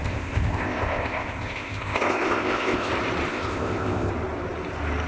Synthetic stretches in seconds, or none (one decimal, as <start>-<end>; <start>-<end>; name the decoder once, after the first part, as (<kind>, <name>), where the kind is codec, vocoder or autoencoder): 0.0-2.9 (codec, ZipCodec); 3.3-4.1